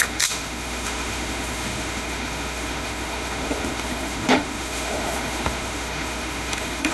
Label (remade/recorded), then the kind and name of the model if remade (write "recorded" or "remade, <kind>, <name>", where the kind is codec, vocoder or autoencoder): remade, autoencoder, DAC-VAE